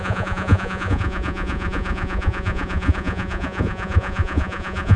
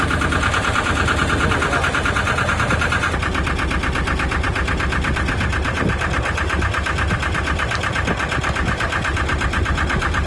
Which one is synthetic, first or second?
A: first